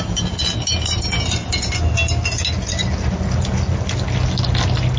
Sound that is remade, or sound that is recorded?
recorded